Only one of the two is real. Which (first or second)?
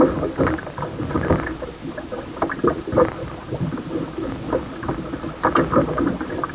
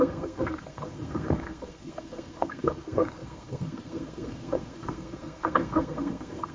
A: first